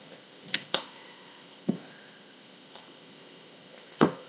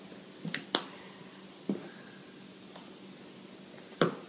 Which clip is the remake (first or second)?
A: first